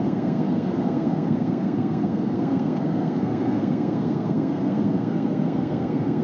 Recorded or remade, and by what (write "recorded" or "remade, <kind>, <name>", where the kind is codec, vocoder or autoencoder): remade, codec, SNAC